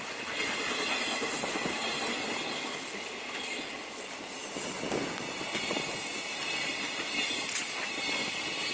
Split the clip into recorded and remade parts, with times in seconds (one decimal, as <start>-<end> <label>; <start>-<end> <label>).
0.0-4.4 recorded; 4.4-4.9 remade; 4.9-8.7 recorded